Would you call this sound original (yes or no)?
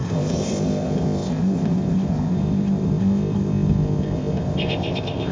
no